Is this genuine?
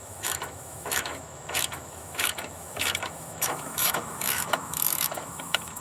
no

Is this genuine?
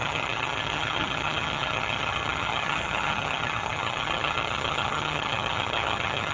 no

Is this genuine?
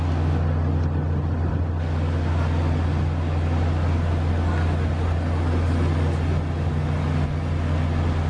yes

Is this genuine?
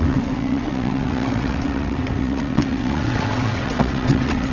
no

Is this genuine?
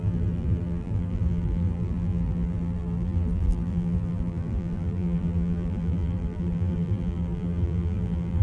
no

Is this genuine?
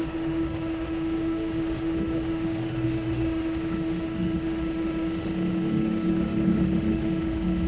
no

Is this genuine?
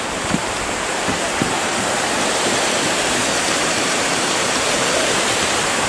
no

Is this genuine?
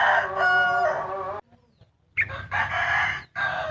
yes